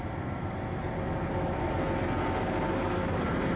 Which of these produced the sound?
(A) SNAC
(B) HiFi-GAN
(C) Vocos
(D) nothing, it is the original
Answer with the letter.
D